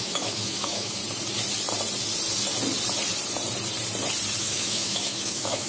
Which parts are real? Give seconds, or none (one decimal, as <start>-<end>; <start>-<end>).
1.0-4.4